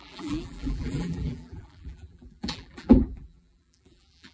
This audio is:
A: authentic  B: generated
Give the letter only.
B